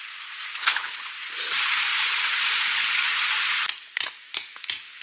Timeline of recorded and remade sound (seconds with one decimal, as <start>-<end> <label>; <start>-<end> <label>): 0.0-0.5 recorded; 0.5-1.1 remade; 1.1-5.0 recorded